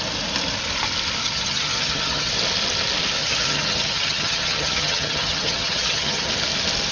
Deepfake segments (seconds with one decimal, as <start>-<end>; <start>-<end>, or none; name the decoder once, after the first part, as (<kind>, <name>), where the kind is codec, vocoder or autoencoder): 1.2-2.3 (vocoder, HiFi-GAN); 3.2-6.3